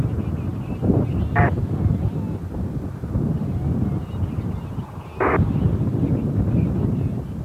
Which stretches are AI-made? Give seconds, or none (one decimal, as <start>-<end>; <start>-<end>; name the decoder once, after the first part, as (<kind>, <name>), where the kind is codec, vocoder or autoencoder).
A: 0.5-1.3 (vocoder, BigVGAN v2)